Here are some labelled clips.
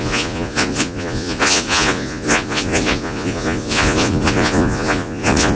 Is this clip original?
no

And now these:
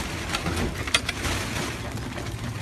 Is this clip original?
yes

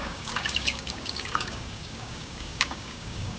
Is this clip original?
no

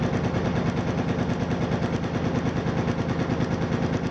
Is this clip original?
yes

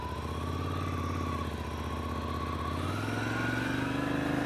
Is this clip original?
yes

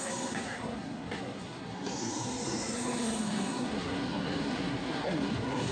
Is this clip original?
no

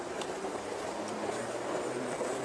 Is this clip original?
no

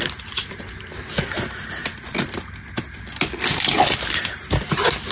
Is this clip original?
yes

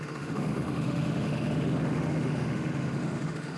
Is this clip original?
no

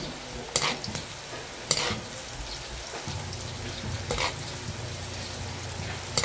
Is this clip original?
yes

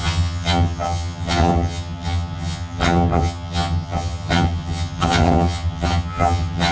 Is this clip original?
no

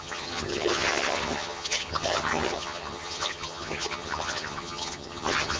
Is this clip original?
no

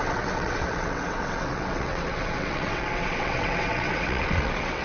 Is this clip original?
no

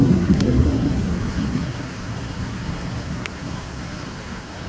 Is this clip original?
no